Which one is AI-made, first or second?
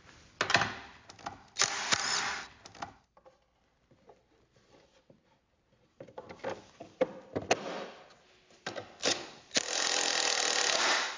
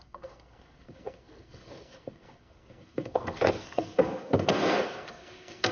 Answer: second